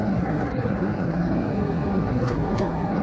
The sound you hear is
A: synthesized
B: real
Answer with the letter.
A